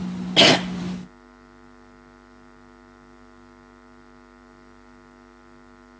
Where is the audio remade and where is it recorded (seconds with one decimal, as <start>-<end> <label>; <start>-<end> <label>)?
0.0-6.0 recorded